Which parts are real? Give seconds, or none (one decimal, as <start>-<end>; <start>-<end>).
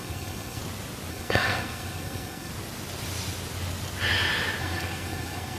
0.6-1.1; 2.5-4.6